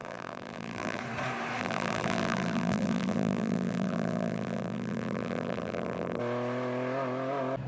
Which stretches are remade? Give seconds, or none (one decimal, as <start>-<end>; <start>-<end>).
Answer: 0.0-1.0; 1.6-6.2